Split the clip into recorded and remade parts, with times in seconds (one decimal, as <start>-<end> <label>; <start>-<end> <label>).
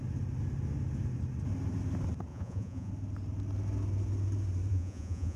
0.0-2.3 recorded; 2.3-2.9 remade; 2.9-4.7 recorded; 4.7-5.4 remade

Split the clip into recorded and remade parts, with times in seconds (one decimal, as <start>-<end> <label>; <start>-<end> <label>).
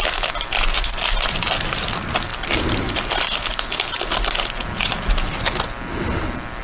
0.0-6.6 recorded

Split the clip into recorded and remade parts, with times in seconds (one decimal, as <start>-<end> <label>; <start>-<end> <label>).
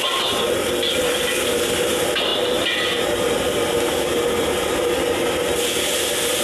0.0-6.4 recorded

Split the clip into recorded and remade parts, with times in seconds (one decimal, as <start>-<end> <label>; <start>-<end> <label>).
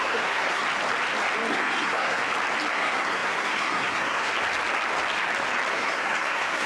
0.0-0.6 remade; 0.6-1.5 recorded; 1.5-2.2 remade; 2.2-2.7 recorded; 2.7-4.3 remade; 4.3-5.7 recorded; 5.7-6.7 remade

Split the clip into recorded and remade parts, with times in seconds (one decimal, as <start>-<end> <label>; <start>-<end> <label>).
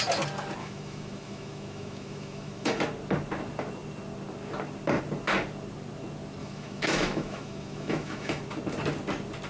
0.0-0.6 recorded; 0.6-2.8 remade; 2.8-6.4 recorded; 6.4-8.4 remade; 8.4-9.5 recorded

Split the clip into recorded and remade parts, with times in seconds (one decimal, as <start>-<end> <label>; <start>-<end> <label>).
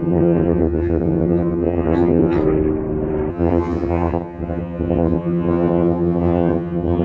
0.0-2.4 remade; 2.4-3.3 recorded; 3.3-7.0 remade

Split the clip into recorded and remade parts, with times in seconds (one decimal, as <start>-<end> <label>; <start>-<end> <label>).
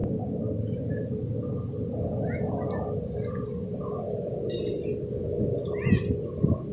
0.0-6.7 recorded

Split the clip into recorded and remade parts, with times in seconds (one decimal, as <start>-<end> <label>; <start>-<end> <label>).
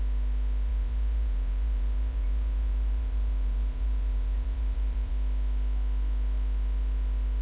0.0-0.7 recorded; 0.7-5.1 remade; 5.1-7.4 recorded